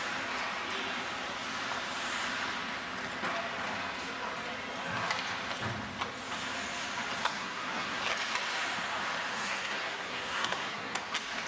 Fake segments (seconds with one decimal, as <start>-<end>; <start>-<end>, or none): 7.2-8.0; 9.3-11.0